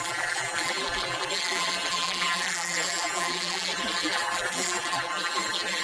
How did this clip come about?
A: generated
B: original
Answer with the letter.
A